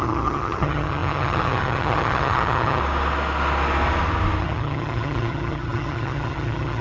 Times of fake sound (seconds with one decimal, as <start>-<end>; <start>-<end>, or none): 0.0-2.8; 4.4-6.8